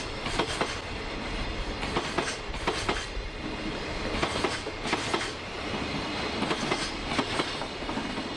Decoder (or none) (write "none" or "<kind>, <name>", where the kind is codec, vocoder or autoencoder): none